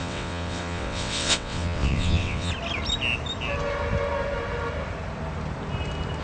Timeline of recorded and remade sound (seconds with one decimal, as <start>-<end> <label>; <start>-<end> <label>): 0.0-2.5 remade; 2.5-6.2 recorded